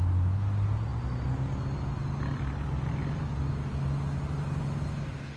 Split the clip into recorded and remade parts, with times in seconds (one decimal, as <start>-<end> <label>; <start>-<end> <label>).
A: 0.0-5.4 recorded